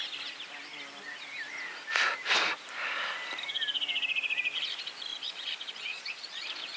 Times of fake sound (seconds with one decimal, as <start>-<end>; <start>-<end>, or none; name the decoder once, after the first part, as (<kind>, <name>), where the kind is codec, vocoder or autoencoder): 5.1-6.8 (vocoder, Vocos)